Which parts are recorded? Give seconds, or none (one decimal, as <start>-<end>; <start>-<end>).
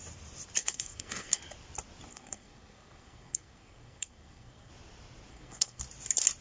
0.0-0.6; 1.4-2.1; 4.7-5.3; 5.8-6.4